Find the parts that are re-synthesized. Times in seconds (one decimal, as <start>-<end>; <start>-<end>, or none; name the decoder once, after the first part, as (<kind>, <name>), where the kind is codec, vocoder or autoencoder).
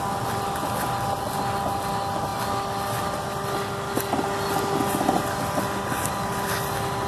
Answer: none